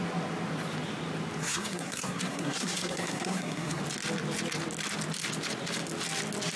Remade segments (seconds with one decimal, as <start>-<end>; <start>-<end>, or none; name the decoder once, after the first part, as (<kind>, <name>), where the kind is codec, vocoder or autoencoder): 1.4-3.8 (codec, SNAC)

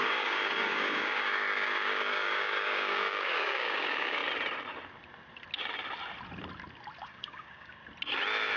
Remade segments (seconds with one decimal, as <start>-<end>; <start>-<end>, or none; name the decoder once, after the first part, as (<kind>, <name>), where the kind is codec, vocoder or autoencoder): 0.0-4.2 (codec, DAC); 7.0-7.8

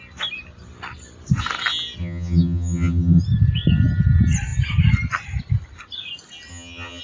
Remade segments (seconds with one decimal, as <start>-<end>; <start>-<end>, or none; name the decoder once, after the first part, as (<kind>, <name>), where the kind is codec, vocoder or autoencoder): 2.0-3.2 (vocoder, HiFi-GAN); 6.5-7.0

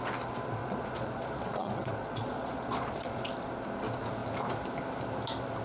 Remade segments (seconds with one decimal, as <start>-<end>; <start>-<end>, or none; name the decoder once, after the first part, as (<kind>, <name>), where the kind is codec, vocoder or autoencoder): 0.6-3.3 (vocoder, Vocos)